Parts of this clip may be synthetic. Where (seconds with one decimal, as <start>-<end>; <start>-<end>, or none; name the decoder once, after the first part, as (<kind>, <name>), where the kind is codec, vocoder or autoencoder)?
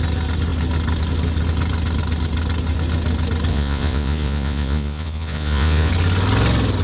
3.5-5.9 (vocoder, Vocos)